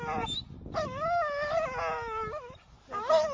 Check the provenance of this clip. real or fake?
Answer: real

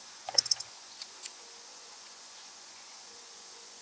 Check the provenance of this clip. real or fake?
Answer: fake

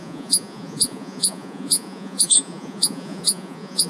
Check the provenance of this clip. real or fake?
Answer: fake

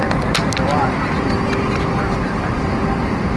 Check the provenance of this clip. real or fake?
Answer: real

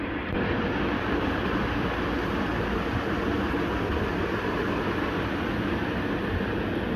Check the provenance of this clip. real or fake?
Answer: real